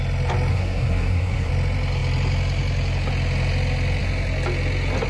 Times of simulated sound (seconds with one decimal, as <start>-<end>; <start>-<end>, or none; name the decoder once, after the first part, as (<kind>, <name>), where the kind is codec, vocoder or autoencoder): 0.5-1.5 (codec, SNAC)